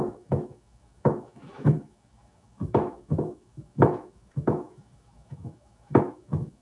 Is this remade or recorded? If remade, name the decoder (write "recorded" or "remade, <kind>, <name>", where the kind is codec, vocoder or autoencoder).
remade, autoencoder, DAC-VAE